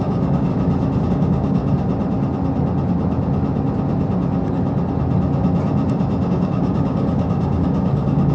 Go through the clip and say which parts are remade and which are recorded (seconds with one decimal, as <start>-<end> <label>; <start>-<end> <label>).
0.0-0.5 remade; 0.5-1.1 recorded; 1.1-1.6 remade; 1.6-6.3 recorded; 6.3-8.3 remade